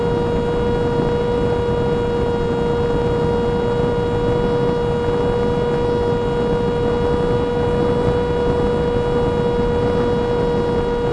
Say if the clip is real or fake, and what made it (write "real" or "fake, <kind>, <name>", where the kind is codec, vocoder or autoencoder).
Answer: real